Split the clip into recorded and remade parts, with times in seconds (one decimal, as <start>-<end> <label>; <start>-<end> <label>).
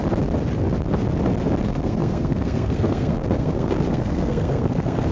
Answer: 0.0-1.6 recorded; 1.6-5.1 remade